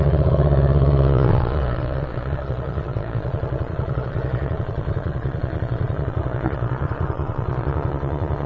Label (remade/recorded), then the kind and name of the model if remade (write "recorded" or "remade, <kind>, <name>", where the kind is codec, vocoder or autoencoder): remade, vocoder, Vocos